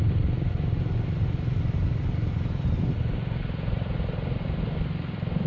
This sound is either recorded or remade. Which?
remade